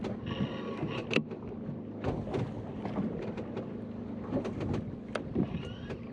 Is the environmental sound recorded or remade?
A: recorded